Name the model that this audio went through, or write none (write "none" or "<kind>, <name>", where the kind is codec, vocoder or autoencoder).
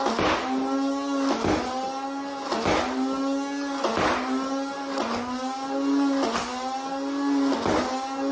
none